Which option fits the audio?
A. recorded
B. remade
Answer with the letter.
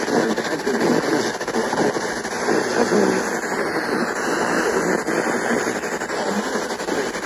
A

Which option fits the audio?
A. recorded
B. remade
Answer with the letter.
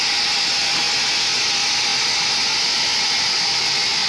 A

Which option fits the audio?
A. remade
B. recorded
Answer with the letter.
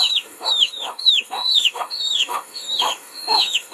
A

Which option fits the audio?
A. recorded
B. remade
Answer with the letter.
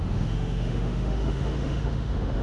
B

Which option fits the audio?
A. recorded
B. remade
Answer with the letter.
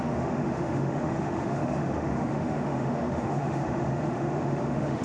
B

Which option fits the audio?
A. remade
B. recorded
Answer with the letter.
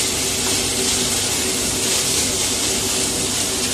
B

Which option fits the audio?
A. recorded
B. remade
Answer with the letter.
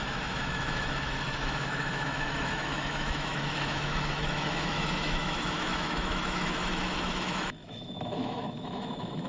B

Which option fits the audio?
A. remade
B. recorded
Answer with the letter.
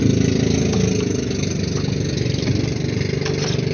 B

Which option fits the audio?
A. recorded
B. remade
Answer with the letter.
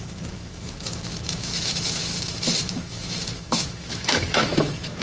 B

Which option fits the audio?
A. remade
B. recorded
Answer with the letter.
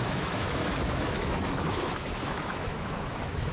A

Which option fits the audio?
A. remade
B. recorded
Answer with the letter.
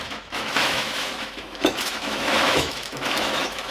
A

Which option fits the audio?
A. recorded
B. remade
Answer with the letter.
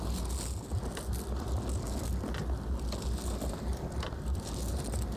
A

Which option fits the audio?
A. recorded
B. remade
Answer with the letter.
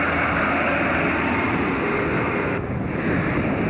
A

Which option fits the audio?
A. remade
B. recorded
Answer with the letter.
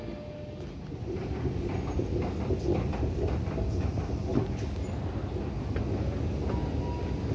B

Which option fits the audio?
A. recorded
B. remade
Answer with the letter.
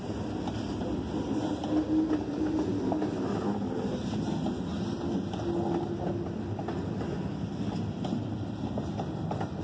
A